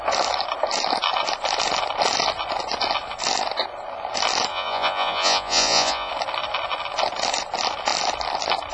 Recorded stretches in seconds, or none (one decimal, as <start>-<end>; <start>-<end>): 0.0-4.5; 6.1-8.7